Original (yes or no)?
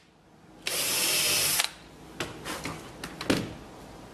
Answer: yes